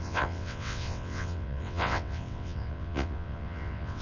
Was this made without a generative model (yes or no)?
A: no